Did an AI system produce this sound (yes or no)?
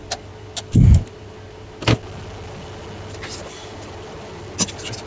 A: no